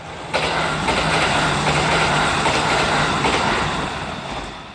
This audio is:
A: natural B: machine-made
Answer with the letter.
A